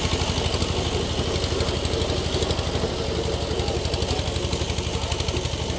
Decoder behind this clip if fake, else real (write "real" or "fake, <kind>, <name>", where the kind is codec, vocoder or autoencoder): real